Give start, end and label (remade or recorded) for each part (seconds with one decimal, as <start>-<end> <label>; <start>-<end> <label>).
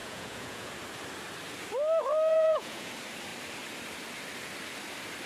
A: 0.0-0.7 remade; 0.7-2.3 recorded; 2.3-2.9 remade; 2.9-5.3 recorded